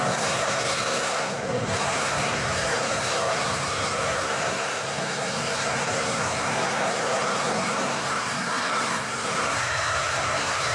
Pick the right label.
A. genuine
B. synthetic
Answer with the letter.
B